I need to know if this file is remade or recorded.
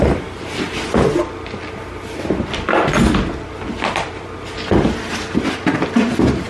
recorded